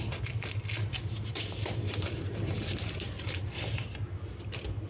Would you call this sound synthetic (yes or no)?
no